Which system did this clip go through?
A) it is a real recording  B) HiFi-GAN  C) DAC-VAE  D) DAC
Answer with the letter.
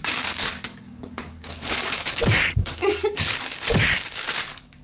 D